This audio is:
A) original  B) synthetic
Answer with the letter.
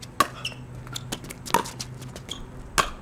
A